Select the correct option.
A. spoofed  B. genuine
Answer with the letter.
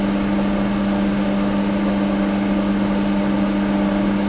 B